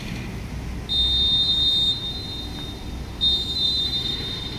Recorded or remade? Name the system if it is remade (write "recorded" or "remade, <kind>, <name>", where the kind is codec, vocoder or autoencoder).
recorded